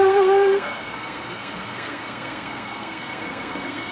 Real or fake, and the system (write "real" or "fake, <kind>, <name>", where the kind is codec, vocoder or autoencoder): fake, codec, SNAC